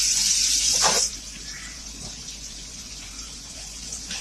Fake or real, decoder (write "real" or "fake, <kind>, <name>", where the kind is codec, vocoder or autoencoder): fake, vocoder, Vocos